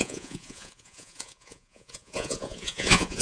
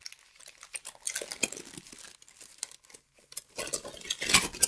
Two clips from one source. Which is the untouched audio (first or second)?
second